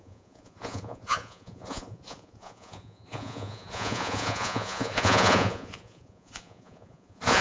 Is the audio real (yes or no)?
no